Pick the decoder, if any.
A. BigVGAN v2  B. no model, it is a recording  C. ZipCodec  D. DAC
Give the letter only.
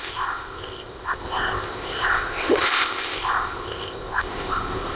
C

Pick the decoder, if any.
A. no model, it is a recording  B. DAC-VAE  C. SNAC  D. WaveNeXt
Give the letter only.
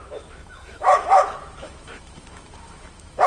B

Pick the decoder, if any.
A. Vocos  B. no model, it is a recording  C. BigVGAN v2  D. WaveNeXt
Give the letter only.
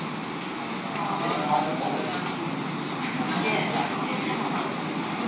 B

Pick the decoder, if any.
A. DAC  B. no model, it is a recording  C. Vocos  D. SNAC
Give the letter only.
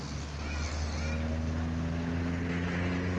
B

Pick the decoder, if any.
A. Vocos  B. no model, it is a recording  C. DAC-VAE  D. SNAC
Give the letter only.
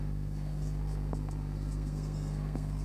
D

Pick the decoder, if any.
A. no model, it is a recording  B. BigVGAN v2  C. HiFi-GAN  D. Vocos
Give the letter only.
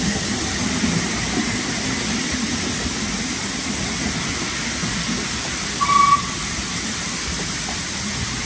A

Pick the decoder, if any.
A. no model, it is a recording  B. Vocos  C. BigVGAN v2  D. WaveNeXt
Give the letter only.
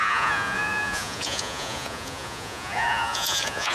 B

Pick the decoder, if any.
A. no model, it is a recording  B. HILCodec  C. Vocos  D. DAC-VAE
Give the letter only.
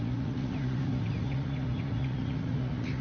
C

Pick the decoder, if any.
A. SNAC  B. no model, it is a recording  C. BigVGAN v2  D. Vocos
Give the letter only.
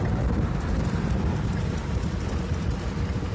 C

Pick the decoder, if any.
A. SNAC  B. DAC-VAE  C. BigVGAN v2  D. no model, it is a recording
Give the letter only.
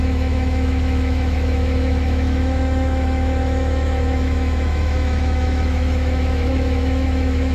B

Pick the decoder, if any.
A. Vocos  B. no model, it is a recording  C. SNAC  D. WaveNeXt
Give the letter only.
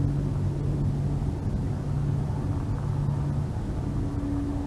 B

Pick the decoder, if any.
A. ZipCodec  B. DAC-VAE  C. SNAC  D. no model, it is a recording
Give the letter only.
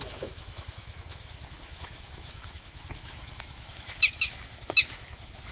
B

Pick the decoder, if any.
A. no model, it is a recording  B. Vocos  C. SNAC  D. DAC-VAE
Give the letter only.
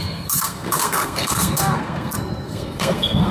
C